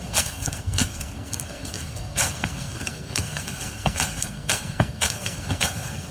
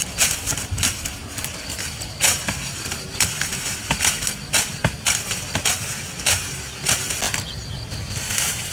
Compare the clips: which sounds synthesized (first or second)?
first